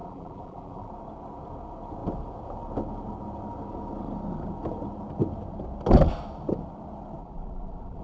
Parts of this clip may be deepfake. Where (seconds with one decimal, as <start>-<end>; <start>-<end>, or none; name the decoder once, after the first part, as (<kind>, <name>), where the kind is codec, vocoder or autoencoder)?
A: 0.0-0.9 (vocoder, BigVGAN v2); 7.2-8.0